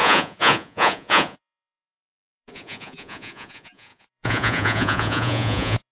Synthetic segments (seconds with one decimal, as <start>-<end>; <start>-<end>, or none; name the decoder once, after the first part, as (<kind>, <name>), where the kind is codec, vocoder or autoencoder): 0.0-5.9 (vocoder, Vocos)